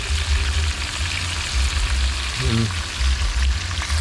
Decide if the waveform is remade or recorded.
recorded